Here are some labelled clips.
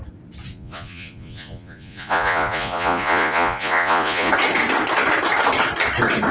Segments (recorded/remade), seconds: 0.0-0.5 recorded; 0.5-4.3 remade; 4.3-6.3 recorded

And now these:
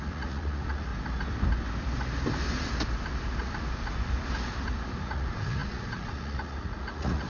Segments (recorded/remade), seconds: 0.0-0.9 remade; 0.9-5.0 recorded; 5.0-7.3 remade

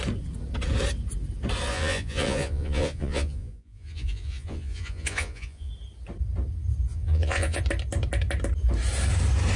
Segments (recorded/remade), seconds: 0.0-1.7 recorded; 1.7-5.7 remade; 5.7-6.9 recorded; 6.9-7.6 remade; 7.6-9.6 recorded

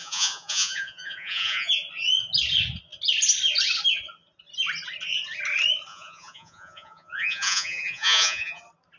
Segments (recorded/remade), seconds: 0.0-1.7 remade; 1.7-5.9 recorded; 5.9-8.6 remade; 8.6-9.0 recorded